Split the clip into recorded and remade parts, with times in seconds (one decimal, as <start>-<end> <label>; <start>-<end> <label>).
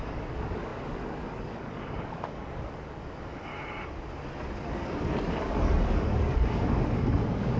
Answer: 0.0-3.5 remade; 3.5-4.4 recorded; 4.4-7.6 remade